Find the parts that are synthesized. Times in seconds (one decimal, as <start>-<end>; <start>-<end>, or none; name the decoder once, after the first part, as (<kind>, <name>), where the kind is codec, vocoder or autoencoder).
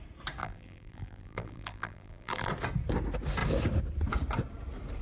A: 0.4-2.5 (vocoder, BigVGAN v2)